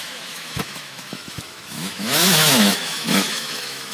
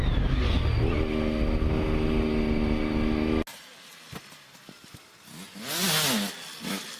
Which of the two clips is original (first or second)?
second